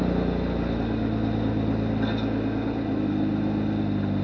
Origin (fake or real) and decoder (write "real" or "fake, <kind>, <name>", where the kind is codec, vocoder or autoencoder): real